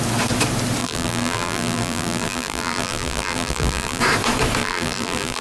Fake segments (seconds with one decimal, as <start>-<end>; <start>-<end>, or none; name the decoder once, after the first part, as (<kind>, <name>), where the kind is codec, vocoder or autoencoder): 0.8-4.0 (vocoder, BigVGAN v2); 4.6-5.4